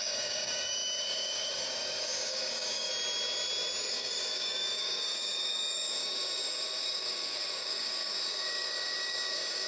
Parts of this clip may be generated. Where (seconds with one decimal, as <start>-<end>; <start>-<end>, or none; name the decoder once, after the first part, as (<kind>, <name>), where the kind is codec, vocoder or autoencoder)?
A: 0.0-2.9 (codec, DAC); 3.9-9.7